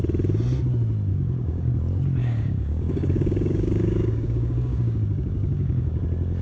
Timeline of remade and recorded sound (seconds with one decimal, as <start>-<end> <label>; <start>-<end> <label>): 0.0-1.1 recorded; 1.1-1.7 remade; 1.7-2.2 recorded; 2.2-6.0 remade; 6.0-6.4 recorded